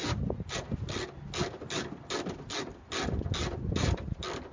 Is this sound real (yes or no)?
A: yes